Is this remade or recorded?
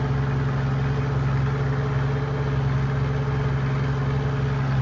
recorded